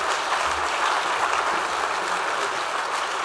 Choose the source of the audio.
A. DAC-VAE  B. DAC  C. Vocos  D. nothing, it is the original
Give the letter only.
D